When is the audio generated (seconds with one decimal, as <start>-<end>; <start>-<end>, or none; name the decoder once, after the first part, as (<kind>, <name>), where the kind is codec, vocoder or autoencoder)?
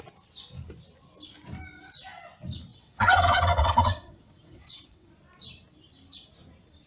2.7-5.1 (vocoder, WaveNeXt)